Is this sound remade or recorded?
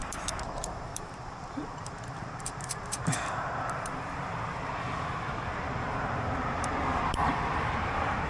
remade